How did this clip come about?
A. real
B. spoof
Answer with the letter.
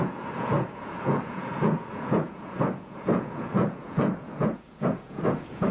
B